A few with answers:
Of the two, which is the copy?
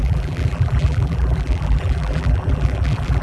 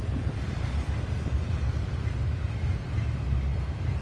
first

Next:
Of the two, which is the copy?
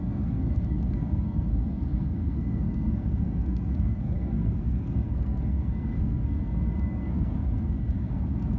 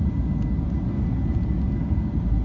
first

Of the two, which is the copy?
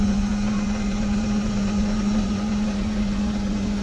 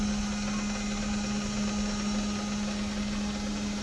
first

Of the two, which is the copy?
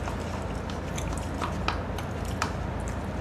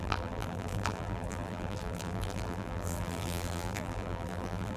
second